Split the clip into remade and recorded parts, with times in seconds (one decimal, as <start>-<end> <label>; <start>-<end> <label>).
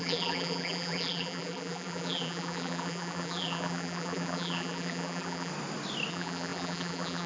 0.0-5.5 remade; 5.5-6.1 recorded; 6.1-7.3 remade